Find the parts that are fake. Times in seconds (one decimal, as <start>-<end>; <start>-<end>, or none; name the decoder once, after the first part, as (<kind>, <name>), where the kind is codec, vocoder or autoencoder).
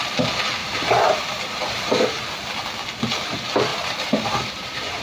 0.6-2.0 (vocoder, BigVGAN v2); 3.7-5.0